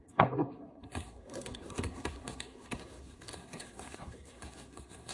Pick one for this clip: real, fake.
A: fake